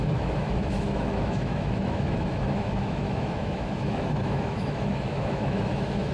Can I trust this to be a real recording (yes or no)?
no